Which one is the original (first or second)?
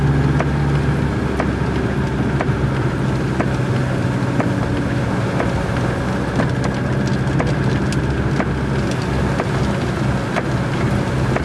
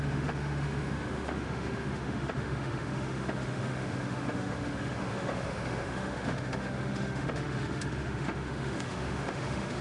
first